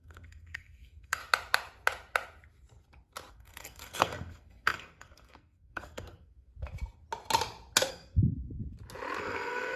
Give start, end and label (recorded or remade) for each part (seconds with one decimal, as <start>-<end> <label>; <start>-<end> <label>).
0.0-1.2 remade; 1.2-3.3 recorded; 3.3-6.5 remade; 6.5-7.9 recorded; 7.9-8.6 remade; 8.6-9.2 recorded; 9.2-9.8 remade